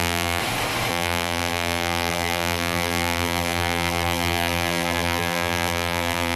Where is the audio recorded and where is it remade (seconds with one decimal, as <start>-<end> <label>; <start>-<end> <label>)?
0.0-0.4 remade; 0.4-0.9 recorded; 0.9-6.4 remade